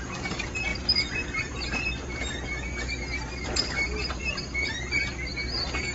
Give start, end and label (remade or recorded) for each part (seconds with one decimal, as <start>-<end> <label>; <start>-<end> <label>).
0.0-5.9 recorded